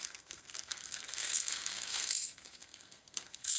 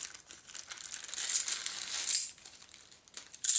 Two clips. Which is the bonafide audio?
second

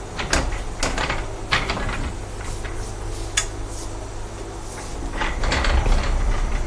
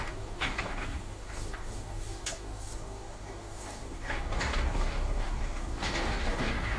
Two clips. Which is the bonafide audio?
first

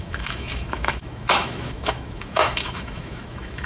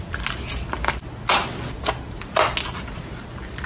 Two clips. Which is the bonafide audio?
second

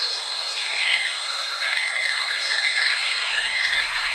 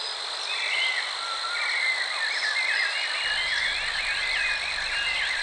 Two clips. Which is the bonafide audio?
second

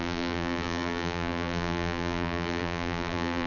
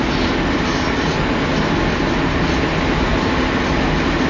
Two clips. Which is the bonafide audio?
second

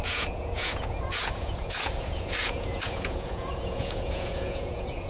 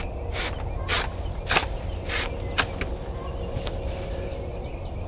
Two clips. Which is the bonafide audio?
second